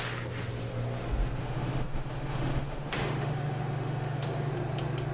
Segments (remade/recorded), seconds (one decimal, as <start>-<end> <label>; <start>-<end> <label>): 0.0-1.4 recorded; 1.4-4.5 remade; 4.5-5.1 recorded